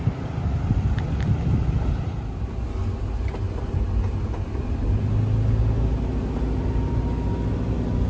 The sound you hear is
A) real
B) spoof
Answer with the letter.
A